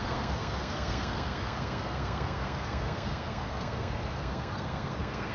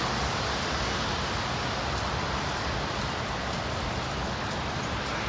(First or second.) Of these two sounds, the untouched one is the second